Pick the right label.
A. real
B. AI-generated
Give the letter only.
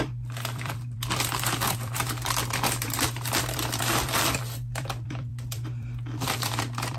B